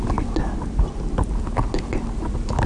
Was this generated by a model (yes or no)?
no